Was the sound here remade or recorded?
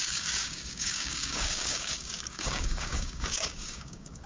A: remade